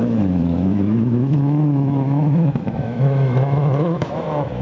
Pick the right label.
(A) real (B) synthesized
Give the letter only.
B